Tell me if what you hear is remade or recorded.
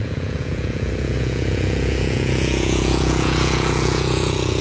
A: remade